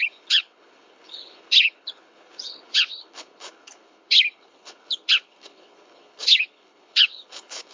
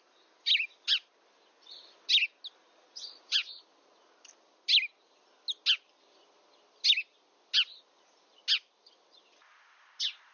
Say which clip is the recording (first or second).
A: second